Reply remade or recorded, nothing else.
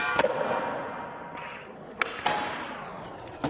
recorded